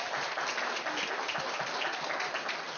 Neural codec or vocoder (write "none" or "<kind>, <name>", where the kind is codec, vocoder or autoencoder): none